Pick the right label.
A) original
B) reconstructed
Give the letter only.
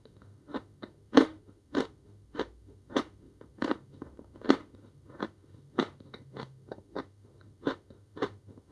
B